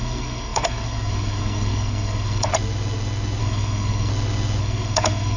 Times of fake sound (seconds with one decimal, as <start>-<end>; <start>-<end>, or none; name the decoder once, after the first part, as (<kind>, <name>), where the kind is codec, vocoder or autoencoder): 0.0-2.5 (codec, SNAC); 3.4-4.1; 4.6-5.4